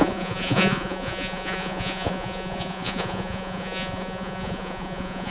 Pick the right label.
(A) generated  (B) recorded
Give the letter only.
A